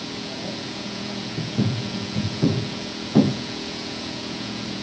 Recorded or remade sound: remade